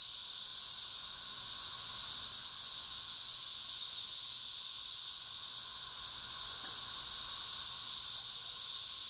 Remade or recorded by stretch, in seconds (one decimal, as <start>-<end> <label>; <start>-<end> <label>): 0.0-0.5 recorded; 0.5-1.9 remade; 1.9-2.4 recorded; 2.4-7.1 remade; 7.1-9.1 recorded